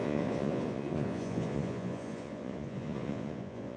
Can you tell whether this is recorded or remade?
remade